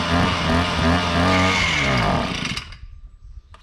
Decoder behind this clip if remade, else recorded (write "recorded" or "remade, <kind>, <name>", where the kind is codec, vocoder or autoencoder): recorded